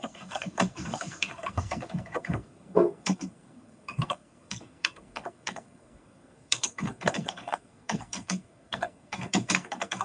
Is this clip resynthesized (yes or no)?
yes